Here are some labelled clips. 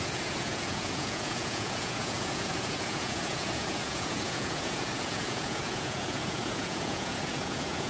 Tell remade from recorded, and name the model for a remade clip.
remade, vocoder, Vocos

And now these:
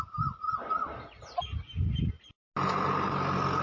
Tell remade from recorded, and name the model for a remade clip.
recorded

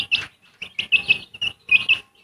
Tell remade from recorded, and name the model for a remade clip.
recorded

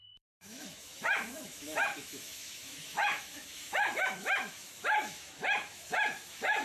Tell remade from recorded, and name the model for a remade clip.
remade, autoencoder, DAC-VAE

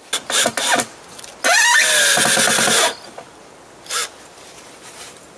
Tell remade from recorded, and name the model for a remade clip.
recorded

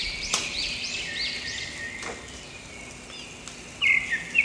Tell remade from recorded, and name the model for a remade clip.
recorded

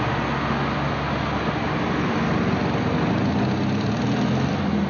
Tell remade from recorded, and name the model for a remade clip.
recorded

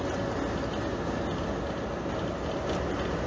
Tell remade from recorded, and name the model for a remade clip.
recorded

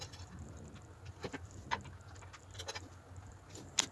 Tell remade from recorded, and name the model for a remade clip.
recorded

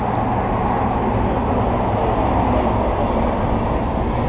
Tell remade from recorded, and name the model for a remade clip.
recorded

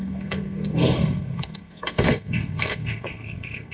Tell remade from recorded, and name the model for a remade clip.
remade, codec, SNAC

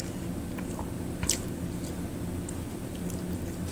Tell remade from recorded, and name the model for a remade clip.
recorded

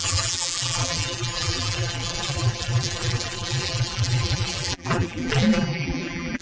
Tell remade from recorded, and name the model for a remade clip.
remade, vocoder, BigVGAN v2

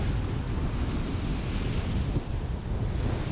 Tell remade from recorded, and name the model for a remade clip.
recorded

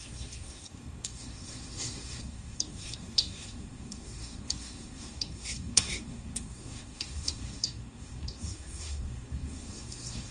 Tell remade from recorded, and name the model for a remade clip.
remade, codec, SNAC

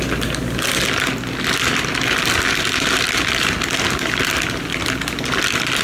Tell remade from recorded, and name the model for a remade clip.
recorded